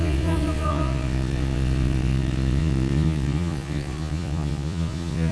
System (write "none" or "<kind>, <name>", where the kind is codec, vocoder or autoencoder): vocoder, Vocos